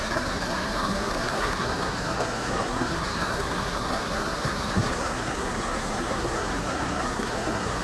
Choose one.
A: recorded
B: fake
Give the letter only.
B